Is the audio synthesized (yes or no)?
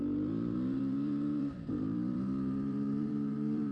yes